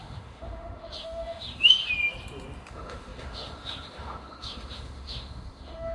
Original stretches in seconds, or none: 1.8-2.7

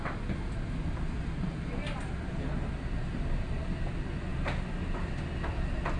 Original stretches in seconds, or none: 0.0-6.0